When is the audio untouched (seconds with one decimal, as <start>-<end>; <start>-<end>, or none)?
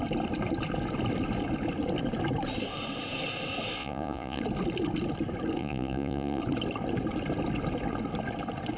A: 0.0-3.8; 4.4-5.6; 6.4-8.8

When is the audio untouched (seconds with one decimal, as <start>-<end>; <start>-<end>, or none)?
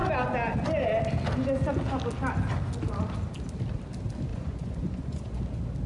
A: 0.0-4.3; 5.4-5.9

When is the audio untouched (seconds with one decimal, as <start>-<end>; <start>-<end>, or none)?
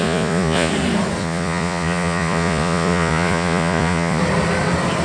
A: 0.7-1.2; 4.2-5.0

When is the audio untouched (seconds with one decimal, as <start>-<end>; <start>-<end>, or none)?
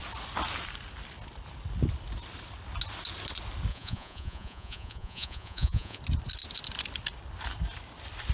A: 0.0-3.7; 6.0-8.3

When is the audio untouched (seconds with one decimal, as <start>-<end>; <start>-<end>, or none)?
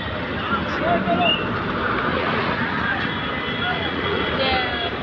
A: 0.0-2.1; 3.1-3.7; 4.2-5.0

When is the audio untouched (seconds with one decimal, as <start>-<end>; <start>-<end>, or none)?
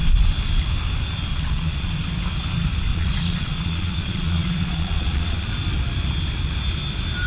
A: 0.0-1.3; 1.9-2.9; 5.5-7.3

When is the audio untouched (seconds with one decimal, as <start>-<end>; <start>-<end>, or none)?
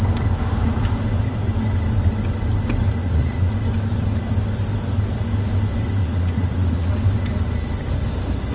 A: 0.0-3.0; 3.5-6.0; 6.9-8.5